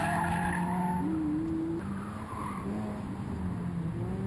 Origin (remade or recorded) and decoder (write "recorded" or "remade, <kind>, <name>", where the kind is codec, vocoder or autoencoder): recorded